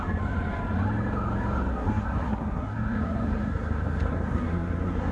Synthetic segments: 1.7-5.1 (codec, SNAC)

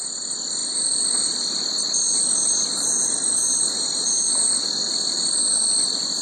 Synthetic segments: none

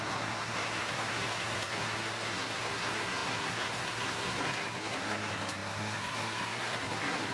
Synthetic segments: 0.0-7.3 (codec, SNAC)